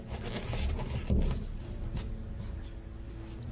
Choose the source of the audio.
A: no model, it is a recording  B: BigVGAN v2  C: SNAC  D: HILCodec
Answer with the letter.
A